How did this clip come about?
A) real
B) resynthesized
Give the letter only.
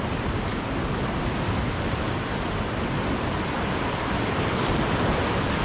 A